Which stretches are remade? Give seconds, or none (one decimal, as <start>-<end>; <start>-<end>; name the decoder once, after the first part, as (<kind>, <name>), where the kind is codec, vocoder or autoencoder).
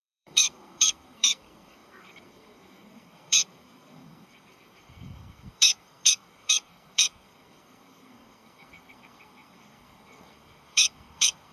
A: 0.0-11.5 (codec, SNAC)